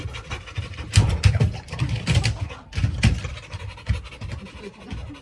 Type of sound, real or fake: fake